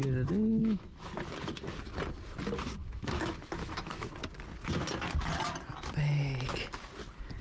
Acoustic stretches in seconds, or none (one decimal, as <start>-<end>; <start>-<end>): 0.0-0.5; 1.1-2.8; 4.1-7.4